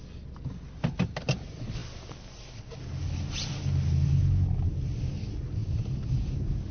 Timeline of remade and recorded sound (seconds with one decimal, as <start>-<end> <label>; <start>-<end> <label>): 0.0-6.7 recorded